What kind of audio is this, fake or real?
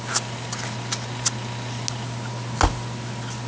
real